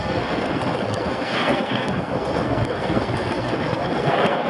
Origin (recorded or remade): remade